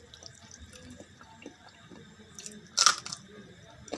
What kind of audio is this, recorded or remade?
recorded